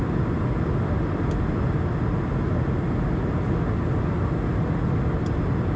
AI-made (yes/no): no